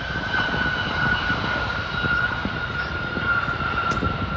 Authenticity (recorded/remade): recorded